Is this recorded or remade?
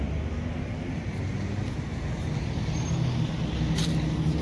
recorded